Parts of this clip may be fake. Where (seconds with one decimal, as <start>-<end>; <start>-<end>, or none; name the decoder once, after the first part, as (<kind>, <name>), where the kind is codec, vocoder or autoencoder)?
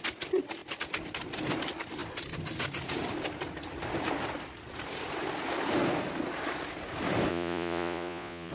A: 7.3-8.5 (vocoder, Vocos)